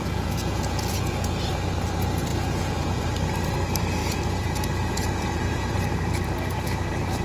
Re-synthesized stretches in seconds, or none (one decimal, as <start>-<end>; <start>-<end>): 0.0-1.4; 2.3-3.1; 4.0-5.8